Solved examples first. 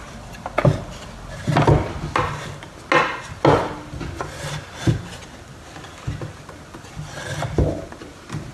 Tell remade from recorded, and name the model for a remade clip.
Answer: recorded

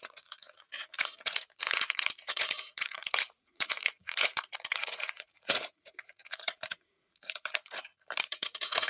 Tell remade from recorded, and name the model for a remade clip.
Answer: remade, vocoder, Vocos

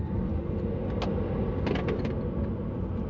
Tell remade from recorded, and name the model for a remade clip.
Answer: recorded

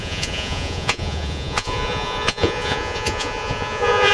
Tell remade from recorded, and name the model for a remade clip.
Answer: remade, vocoder, Vocos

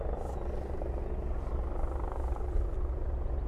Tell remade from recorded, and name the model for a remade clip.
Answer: recorded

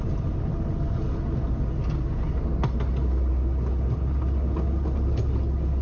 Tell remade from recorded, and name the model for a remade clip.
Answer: recorded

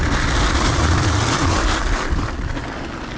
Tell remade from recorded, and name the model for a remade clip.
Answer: recorded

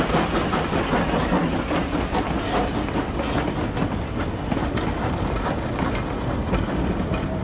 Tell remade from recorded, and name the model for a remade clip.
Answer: recorded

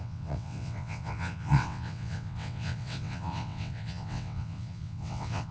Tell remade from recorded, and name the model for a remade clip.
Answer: remade, vocoder, WaveNeXt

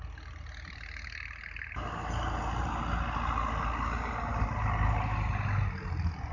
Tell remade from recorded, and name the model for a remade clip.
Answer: recorded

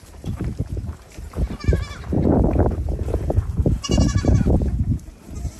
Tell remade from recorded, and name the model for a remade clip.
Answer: remade, vocoder, BigVGAN v2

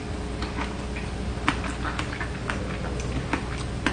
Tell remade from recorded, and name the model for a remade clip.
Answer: recorded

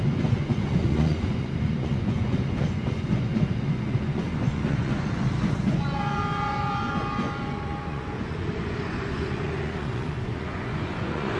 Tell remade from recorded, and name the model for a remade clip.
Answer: remade, vocoder, Vocos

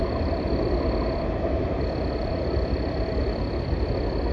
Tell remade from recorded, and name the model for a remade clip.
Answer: remade, vocoder, BigVGAN v2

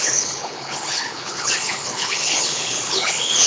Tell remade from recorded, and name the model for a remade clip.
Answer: remade, codec, HILCodec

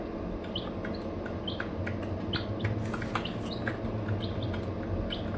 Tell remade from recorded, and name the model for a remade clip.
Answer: recorded